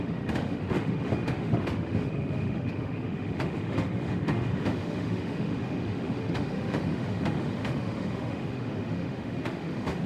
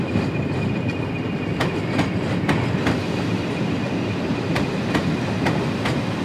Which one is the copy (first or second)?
first